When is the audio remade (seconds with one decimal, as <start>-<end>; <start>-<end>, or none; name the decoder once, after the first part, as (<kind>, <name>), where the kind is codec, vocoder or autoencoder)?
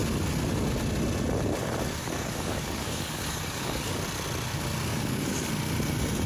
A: 2.0-4.0 (codec, DAC); 4.9-5.5